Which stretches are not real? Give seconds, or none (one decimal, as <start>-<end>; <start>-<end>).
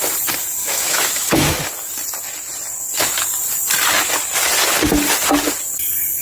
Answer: 0.6-1.6